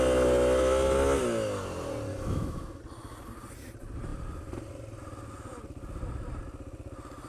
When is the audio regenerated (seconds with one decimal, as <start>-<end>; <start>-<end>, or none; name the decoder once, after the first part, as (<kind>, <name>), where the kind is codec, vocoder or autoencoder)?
2.1-2.8 (autoencoder, DAC-VAE)